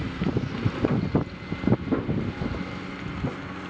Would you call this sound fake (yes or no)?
no